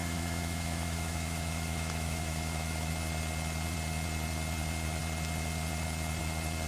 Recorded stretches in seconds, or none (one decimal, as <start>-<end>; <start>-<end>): 2.9-6.7